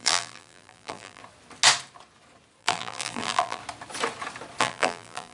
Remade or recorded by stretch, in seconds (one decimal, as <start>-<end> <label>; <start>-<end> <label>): 0.0-1.2 remade; 1.2-2.6 recorded; 2.6-3.6 remade; 3.6-4.6 recorded; 4.6-5.3 remade